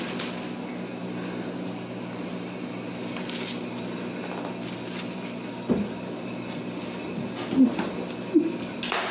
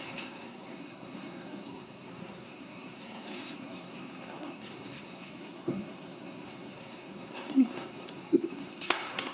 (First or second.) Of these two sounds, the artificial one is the second